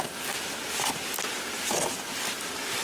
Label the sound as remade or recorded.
recorded